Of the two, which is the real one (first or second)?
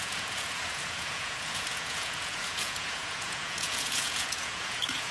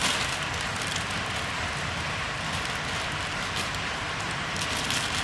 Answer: second